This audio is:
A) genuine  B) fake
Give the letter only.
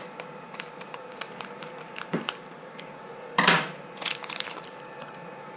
B